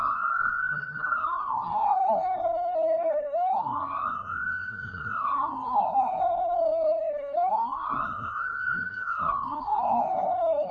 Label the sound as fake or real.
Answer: fake